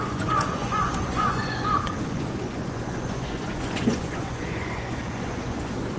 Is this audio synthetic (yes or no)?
yes